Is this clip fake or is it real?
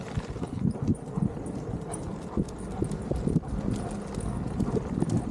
real